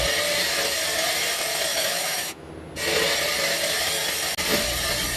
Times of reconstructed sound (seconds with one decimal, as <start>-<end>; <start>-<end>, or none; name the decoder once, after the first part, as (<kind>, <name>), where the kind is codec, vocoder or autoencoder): 1.7-2.5 (autoencoder, DAC-VAE)